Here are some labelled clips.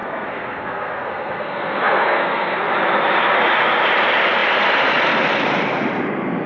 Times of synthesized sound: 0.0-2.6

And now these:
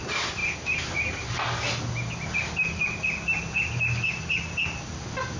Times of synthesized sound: none

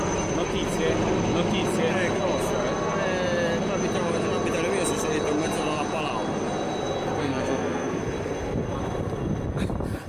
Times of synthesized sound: 7.2-8.0

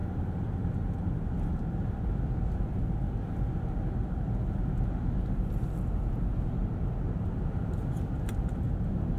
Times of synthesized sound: none

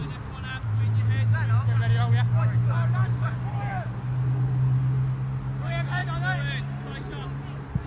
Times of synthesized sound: none

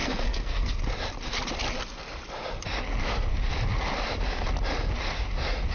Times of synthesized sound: 0.0-0.8

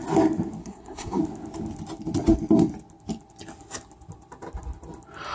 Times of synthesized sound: 0.6-1.2